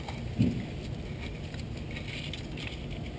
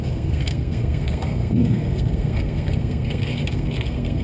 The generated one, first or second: second